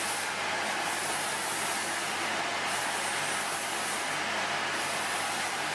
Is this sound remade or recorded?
recorded